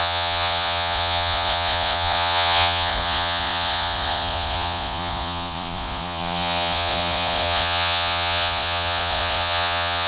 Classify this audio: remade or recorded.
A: remade